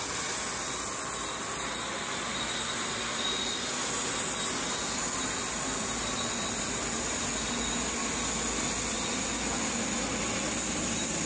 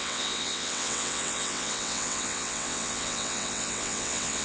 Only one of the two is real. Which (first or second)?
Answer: first